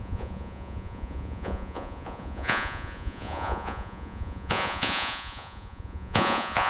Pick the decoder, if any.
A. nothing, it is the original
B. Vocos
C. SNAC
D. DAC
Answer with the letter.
B